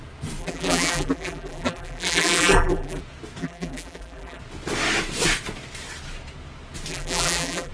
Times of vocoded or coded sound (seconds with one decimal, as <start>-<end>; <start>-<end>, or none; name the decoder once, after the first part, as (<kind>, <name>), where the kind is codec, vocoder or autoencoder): 0.4-3.0 (vocoder, BigVGAN v2); 3.4-4.4; 6.9-7.7